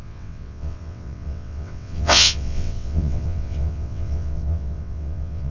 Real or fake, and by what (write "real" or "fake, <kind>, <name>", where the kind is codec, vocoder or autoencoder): fake, vocoder, WaveNeXt